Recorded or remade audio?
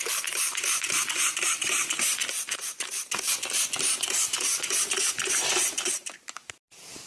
remade